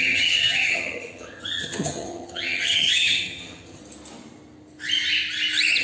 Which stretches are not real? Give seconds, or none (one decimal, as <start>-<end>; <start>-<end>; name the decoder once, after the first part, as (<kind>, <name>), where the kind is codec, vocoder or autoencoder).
0.0-3.8 (vocoder, HiFi-GAN)